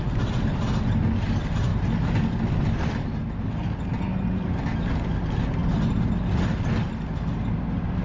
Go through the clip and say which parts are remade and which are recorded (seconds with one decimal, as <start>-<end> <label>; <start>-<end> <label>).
0.0-8.0 recorded